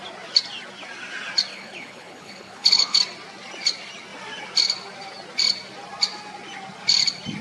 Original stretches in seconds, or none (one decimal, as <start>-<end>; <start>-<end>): 0.0-1.5; 3.0-7.4